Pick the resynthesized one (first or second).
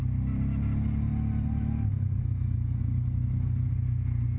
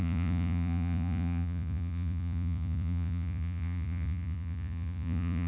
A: second